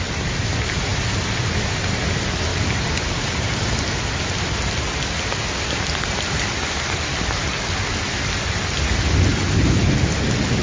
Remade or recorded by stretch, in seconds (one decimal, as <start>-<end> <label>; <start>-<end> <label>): 0.0-2.5 recorded; 2.5-3.6 remade; 3.6-10.6 recorded